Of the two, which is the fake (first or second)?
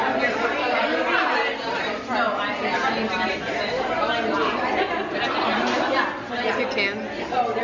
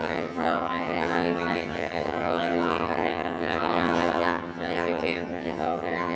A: second